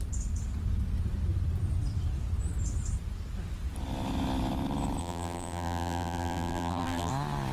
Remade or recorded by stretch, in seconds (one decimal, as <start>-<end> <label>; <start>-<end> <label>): 0.0-5.0 recorded; 5.0-7.1 remade; 7.1-7.5 recorded